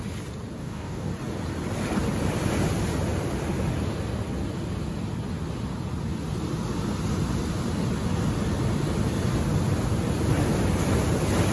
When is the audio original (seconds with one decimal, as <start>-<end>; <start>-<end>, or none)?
0.0-0.6; 1.1-11.5